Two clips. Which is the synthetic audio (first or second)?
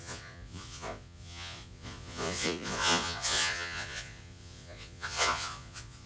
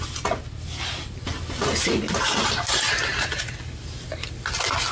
first